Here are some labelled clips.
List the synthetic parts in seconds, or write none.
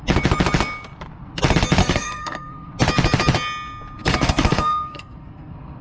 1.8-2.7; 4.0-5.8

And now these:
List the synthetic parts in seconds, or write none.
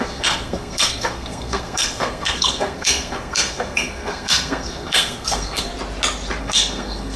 0.0-5.7; 6.4-7.2